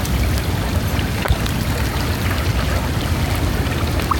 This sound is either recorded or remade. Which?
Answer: recorded